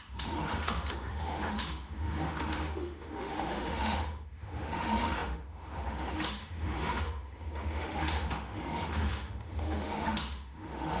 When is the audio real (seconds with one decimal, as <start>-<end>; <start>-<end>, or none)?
none